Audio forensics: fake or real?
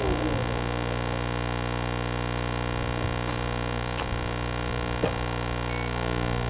real